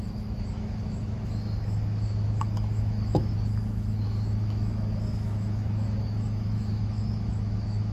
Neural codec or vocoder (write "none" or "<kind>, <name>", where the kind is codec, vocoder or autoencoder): autoencoder, DAC-VAE